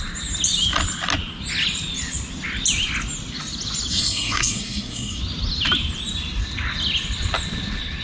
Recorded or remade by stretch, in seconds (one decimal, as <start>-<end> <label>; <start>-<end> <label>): 0.0-3.9 recorded; 3.9-5.2 remade; 5.2-8.0 recorded